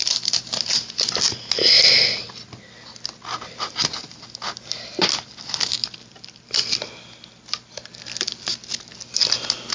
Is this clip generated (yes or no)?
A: no